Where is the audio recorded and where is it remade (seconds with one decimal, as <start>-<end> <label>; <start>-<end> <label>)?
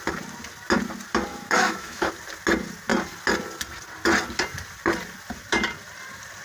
0.0-1.3 recorded; 1.3-2.1 remade; 2.1-6.4 recorded